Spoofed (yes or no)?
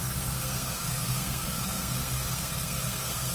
yes